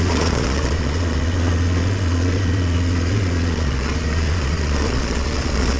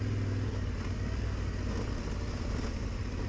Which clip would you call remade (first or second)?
first